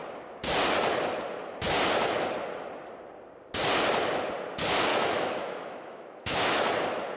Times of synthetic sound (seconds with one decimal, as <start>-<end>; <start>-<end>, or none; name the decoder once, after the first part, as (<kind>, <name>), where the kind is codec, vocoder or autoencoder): 4.9-6.7 (autoencoder, DAC-VAE)